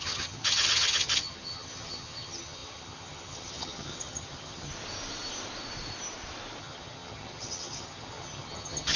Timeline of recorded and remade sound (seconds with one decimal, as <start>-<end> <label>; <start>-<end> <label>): 0.0-4.7 remade; 4.7-6.6 recorded; 6.6-9.0 remade